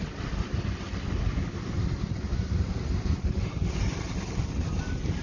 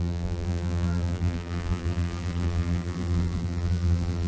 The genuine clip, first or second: first